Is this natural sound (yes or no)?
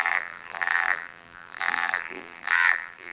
no